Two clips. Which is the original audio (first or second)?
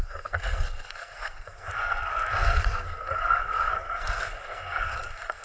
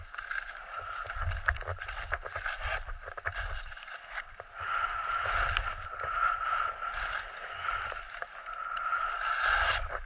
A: second